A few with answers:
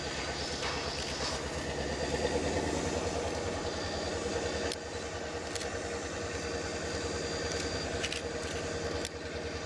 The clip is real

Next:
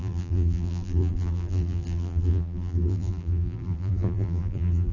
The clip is fake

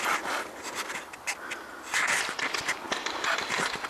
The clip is fake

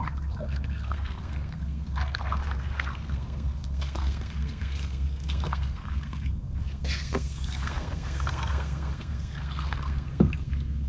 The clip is fake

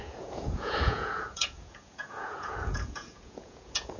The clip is fake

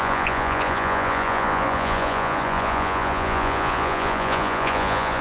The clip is fake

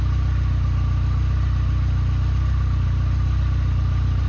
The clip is real